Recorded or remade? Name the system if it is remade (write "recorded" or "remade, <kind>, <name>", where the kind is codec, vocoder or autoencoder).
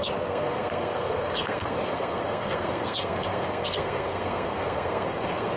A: remade, codec, SNAC